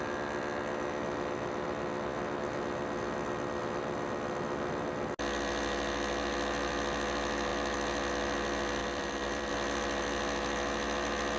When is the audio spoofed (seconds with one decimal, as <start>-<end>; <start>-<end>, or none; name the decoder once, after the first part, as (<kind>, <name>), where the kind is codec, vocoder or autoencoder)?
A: 8.8-9.5 (vocoder, BigVGAN v2)